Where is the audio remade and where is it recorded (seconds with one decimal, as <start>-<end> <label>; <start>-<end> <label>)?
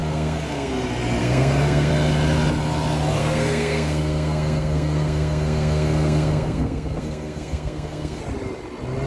0.0-0.7 remade; 0.7-1.2 recorded; 1.2-1.9 remade; 1.9-3.2 recorded; 3.2-8.2 remade; 8.2-9.1 recorded